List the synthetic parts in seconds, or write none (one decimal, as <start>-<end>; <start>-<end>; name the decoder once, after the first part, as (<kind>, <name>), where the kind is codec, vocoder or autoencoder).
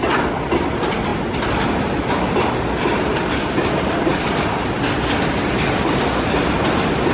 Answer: none